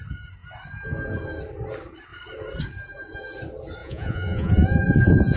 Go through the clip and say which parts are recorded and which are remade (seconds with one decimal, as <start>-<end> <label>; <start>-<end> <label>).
0.0-3.8 recorded; 3.8-5.4 remade